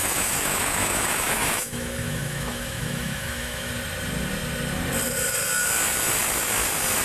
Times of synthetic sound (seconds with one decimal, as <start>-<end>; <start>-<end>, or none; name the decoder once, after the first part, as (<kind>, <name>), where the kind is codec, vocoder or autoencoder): 0.0-3.7 (autoencoder, DAC-VAE)